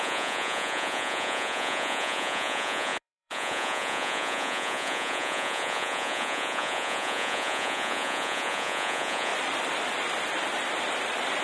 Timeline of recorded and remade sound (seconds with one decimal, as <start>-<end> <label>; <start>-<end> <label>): 0.0-9.3 remade; 9.3-11.4 recorded